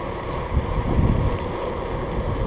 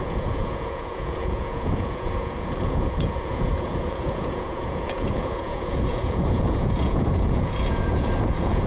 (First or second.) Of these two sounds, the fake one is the second